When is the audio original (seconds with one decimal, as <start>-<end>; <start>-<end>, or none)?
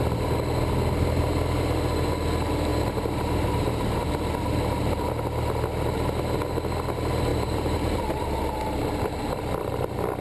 0.0-2.7; 4.1-7.3; 8.8-10.2